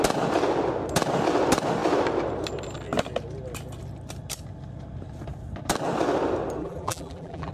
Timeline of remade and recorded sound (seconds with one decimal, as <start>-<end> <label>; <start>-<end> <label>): 0.0-6.6 recorded; 6.6-7.5 remade